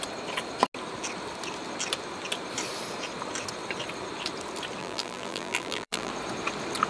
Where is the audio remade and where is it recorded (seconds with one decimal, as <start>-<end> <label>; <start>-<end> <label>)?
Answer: 0.0-4.8 recorded; 4.8-6.1 remade; 6.1-6.9 recorded